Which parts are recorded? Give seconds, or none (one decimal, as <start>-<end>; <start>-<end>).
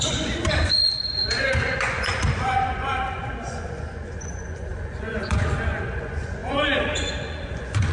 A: none